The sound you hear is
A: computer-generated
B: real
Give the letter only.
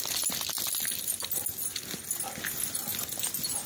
B